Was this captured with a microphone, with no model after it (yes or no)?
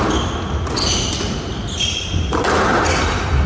yes